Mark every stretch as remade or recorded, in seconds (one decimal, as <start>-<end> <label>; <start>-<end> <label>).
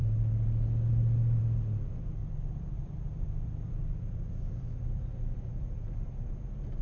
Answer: 0.0-2.2 recorded; 2.2-6.3 remade; 6.3-6.8 recorded